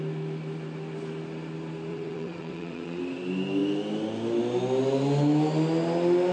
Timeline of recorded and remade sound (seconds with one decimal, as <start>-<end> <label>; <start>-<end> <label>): 0.0-1.9 recorded; 1.9-3.0 remade; 3.0-6.3 recorded